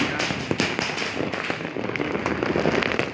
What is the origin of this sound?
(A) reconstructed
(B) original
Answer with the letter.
B